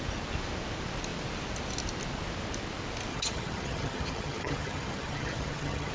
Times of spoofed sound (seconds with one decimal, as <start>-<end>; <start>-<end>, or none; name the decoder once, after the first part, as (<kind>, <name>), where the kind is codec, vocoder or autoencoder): 3.1-5.9 (vocoder, HiFi-GAN)